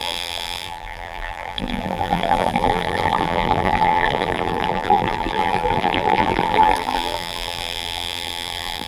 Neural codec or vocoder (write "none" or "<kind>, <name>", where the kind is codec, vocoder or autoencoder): vocoder, BigVGAN v2